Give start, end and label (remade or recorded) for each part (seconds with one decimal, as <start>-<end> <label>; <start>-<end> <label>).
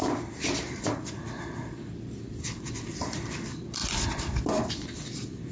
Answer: 0.0-3.3 remade; 3.3-3.8 recorded; 3.8-4.7 remade; 4.7-5.5 recorded